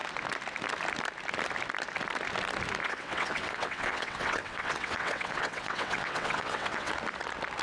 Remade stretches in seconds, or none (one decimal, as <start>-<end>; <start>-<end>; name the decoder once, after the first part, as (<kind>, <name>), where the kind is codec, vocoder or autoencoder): 2.8-6.9 (vocoder, WaveNeXt)